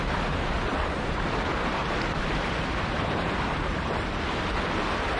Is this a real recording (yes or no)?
yes